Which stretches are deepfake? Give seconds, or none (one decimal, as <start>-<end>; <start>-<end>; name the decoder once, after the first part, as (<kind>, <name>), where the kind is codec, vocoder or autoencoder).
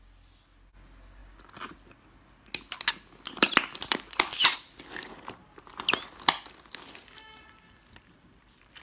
none